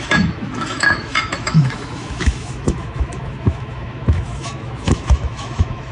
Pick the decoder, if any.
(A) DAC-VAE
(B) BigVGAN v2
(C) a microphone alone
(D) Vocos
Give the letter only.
A